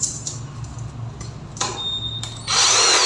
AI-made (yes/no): no